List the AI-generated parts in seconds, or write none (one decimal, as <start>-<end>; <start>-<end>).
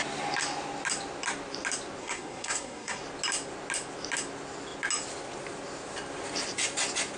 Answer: 2.0-3.0